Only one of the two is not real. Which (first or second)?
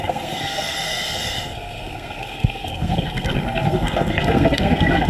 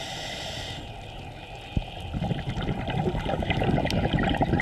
first